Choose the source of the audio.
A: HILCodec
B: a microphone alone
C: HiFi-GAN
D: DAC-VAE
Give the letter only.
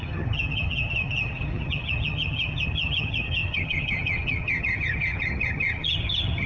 C